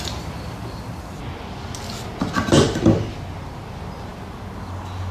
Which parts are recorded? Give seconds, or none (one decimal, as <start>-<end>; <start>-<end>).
0.0-5.1